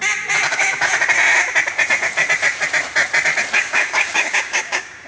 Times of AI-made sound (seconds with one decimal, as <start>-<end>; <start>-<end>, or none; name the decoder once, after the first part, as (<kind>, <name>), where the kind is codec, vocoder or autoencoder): 0.5-0.9 (codec, DAC); 3.6-5.1

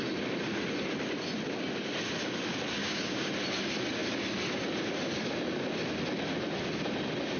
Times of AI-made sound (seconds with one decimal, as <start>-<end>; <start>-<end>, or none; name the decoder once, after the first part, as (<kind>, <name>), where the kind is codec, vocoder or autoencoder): 2.8-3.3 (codec, DAC)